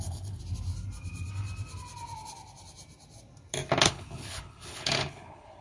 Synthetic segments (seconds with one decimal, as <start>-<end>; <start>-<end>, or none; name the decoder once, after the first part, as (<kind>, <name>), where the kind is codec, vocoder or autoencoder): 0.0-0.4 (codec, HILCodec); 3.8-5.6